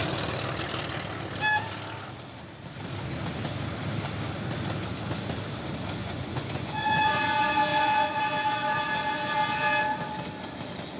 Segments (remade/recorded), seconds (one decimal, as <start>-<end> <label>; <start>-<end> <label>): 0.0-6.0 recorded; 6.0-7.2 remade; 7.2-7.7 recorded; 7.7-8.2 remade; 8.2-11.0 recorded